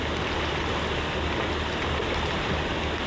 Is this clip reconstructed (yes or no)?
no